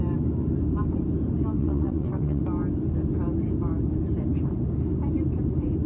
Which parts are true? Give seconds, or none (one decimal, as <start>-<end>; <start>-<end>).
0.0-1.6; 2.4-5.9